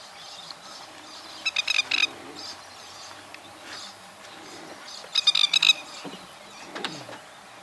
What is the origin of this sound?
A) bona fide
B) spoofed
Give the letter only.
A